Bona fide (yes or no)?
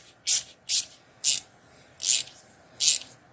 yes